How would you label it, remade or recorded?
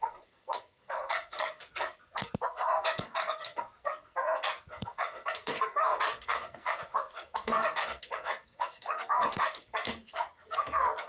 remade